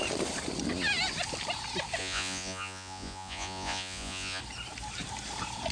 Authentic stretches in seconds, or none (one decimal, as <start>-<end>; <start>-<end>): 0.0-2.0; 4.4-5.7